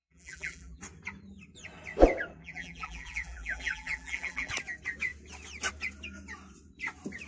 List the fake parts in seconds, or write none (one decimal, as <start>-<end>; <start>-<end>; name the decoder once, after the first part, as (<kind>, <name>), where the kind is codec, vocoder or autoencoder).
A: 0.0-0.8 (vocoder, BigVGAN v2); 2.4-4.5